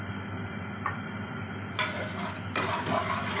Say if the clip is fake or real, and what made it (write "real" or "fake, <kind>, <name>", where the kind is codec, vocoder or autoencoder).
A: real